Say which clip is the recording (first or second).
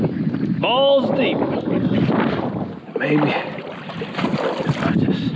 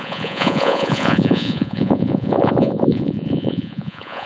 first